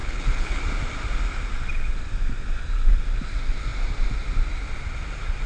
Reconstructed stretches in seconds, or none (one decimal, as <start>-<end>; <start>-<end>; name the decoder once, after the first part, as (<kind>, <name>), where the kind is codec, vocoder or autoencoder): 0.0-0.6 (codec, HILCodec)